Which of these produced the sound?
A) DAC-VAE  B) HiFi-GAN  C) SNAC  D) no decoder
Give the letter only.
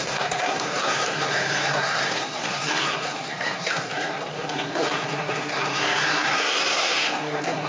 C